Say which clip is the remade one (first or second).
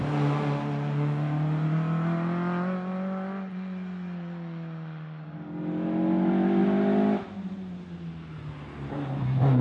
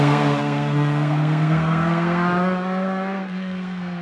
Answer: second